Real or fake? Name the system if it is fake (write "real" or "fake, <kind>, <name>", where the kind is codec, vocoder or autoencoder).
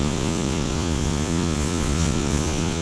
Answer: fake, vocoder, Vocos